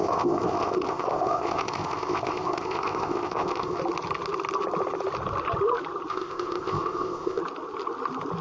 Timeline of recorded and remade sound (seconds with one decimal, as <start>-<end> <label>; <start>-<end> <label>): 0.0-3.8 remade; 3.8-6.1 recorded; 6.1-7.4 remade; 7.4-8.4 recorded